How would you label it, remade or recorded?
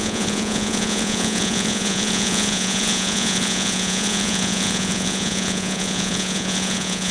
remade